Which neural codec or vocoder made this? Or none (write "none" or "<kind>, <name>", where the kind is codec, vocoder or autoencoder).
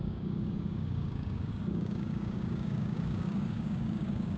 codec, DAC